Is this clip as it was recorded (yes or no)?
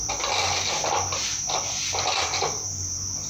yes